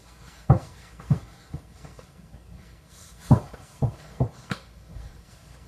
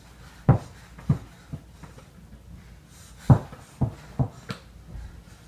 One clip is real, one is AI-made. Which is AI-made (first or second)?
first